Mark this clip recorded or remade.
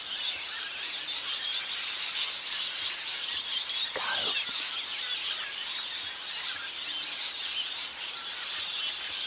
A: recorded